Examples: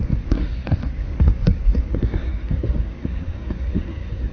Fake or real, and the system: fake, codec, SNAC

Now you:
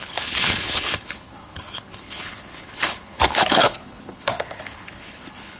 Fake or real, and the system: fake, codec, HILCodec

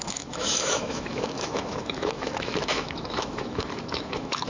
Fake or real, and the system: fake, autoencoder, DAC-VAE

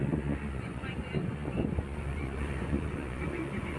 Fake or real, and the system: fake, vocoder, Vocos